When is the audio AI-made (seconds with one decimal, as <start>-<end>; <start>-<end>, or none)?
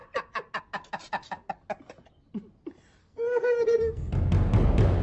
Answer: 3.0-4.1